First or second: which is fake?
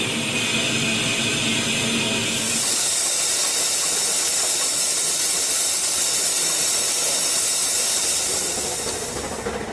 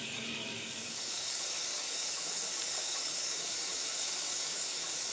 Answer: second